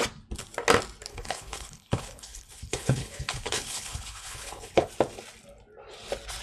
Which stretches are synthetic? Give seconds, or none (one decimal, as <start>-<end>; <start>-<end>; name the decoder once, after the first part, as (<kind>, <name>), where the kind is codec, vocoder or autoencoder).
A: 1.1-4.9 (codec, HILCodec)